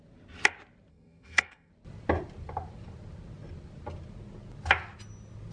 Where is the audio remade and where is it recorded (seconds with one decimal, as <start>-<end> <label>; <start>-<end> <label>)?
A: 0.0-0.9 recorded; 0.9-1.7 remade; 1.7-5.5 recorded